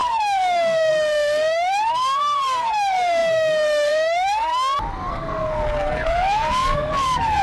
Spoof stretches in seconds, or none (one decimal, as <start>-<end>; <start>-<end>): 0.0-4.5; 5.1-7.4